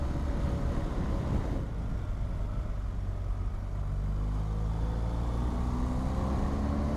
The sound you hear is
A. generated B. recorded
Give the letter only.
B